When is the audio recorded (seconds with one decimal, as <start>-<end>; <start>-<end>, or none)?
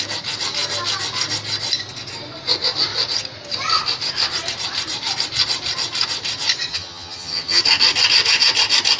0.0-6.7; 7.6-9.0